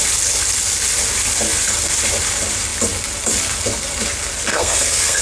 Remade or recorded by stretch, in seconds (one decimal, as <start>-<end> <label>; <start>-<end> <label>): 0.0-4.5 recorded; 4.5-5.2 remade